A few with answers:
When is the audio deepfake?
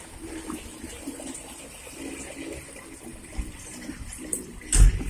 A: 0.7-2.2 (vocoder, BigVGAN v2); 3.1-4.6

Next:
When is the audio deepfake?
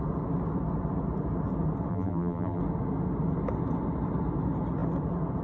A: 1.9-2.6 (vocoder, BigVGAN v2)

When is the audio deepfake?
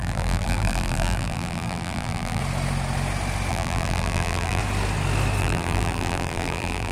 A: 0.0-2.4 (vocoder, BigVGAN v2); 3.5-4.6; 5.4-6.9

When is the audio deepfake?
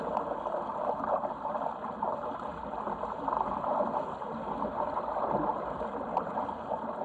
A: 2.5-3.8 (vocoder, BigVGAN v2)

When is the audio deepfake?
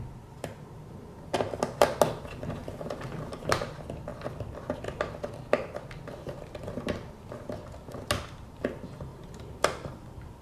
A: 2.6-3.6 (vocoder, BigVGAN v2); 9.1-10.4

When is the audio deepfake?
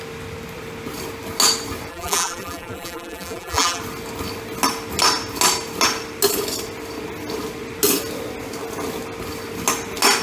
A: 1.9-3.8 (vocoder, BigVGAN v2)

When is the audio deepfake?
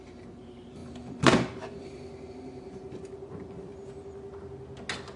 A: 0.0-3.7 (vocoder, BigVGAN v2)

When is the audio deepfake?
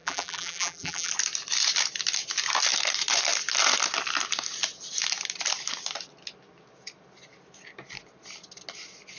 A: 0.0-1.1 (vocoder, BigVGAN v2)